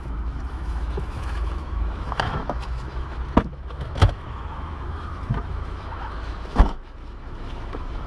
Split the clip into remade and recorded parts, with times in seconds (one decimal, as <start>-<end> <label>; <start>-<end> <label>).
0.0-8.1 remade